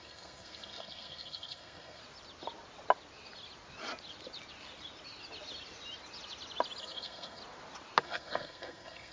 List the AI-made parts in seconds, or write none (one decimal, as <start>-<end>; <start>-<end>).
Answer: 0.0-2.0; 6.8-7.4; 8.0-9.1